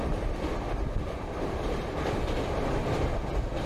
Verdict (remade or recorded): recorded